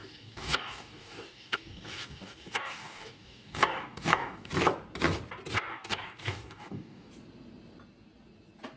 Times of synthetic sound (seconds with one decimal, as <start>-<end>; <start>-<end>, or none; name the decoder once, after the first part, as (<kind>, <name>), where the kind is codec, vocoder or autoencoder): 0.0-4.5 (codec, DAC); 5.7-7.1